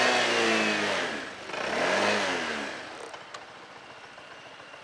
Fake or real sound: real